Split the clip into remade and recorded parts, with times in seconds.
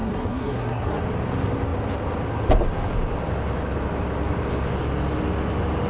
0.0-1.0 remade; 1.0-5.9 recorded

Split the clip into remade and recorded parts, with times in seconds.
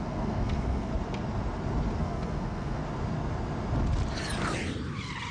0.0-0.9 remade; 0.9-2.0 recorded; 2.0-2.8 remade; 2.8-5.3 recorded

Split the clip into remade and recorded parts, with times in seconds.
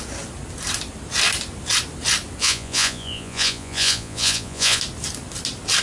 0.0-2.4 recorded; 2.4-4.8 remade; 4.8-5.8 recorded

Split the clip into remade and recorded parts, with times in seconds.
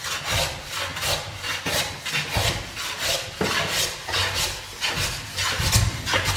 0.0-6.4 recorded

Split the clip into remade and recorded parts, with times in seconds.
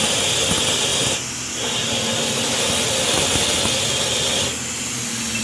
0.0-5.4 recorded